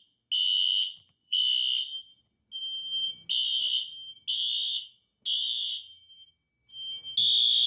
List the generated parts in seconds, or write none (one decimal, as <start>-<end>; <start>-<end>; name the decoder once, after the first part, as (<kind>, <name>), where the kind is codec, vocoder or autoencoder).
0.4-1.4 (vocoder, Vocos)